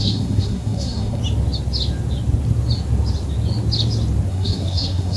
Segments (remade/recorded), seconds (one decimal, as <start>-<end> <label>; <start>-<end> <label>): 0.0-1.2 remade; 1.2-4.3 recorded; 4.3-5.2 remade